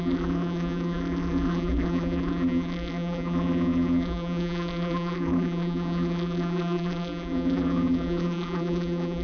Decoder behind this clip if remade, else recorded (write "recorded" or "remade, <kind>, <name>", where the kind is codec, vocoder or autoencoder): remade, vocoder, BigVGAN v2